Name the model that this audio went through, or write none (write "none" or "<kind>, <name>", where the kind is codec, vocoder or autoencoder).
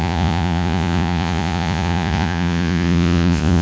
vocoder, Vocos